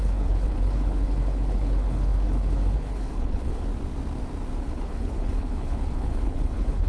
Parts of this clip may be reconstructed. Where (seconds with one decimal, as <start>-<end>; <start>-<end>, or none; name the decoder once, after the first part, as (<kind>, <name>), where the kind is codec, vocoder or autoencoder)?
0.0-3.7 (codec, HILCodec); 4.6-6.9